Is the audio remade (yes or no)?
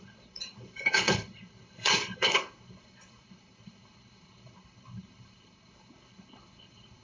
yes